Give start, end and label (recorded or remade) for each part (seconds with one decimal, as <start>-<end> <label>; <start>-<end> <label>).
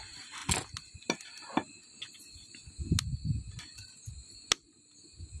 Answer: 0.0-5.4 recorded